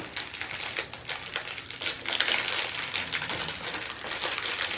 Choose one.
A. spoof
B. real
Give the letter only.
B